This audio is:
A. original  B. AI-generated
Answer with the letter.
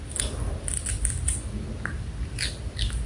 A